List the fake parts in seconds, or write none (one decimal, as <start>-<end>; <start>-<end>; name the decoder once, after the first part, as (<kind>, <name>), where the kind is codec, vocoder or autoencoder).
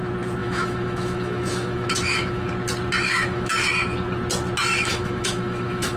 0.4-2.5 (autoencoder, DAC-VAE); 3.1-3.7; 4.6-6.0